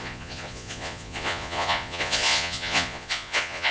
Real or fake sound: fake